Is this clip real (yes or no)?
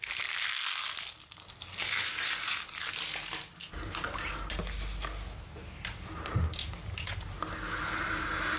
yes